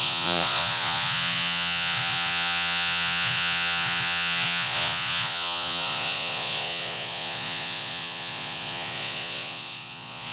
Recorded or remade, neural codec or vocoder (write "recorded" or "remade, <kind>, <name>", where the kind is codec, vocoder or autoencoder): remade, vocoder, Vocos